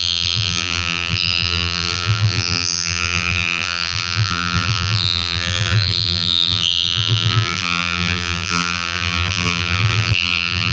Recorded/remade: remade